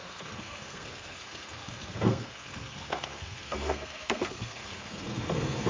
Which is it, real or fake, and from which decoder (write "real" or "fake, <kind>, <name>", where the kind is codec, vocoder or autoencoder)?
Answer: fake, codec, SNAC